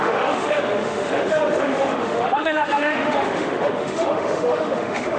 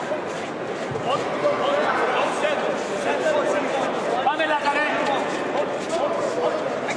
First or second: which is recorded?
second